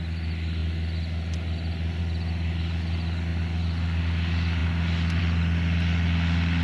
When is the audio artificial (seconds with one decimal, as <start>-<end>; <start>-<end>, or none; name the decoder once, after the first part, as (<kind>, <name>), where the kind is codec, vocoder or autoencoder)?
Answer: none